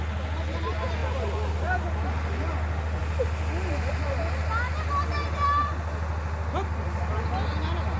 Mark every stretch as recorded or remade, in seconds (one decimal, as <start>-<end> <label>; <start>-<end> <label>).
0.0-8.0 recorded